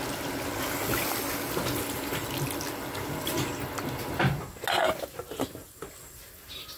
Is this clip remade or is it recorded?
recorded